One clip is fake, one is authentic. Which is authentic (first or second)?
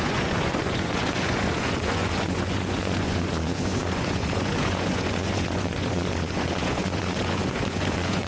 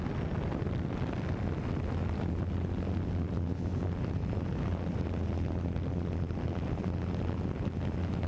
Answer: second